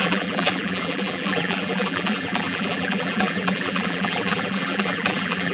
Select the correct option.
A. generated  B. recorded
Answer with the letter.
A